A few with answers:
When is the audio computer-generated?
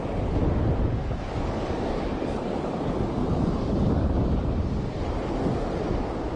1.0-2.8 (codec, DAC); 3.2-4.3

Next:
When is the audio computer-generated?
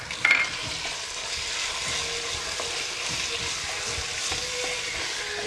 none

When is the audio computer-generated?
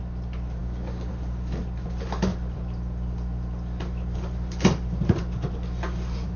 2.3-6.4 (vocoder, BigVGAN v2)